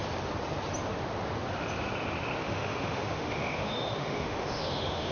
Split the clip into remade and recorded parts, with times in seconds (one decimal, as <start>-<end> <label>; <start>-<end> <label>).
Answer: 0.0-2.4 recorded; 2.4-5.1 remade